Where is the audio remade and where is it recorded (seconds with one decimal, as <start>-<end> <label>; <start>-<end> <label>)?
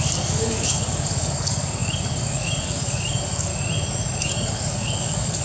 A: 0.0-3.5 remade; 3.5-4.2 recorded; 4.2-5.4 remade